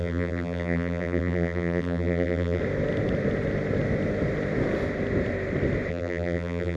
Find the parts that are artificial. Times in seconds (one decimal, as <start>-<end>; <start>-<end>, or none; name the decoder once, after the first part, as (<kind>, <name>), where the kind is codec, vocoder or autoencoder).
0.0-2.6 (vocoder, BigVGAN v2); 5.9-6.8